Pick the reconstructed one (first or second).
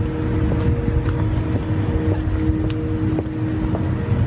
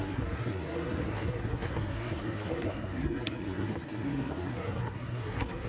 second